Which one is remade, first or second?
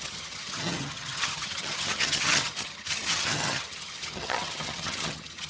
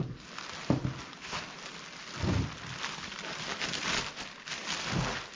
first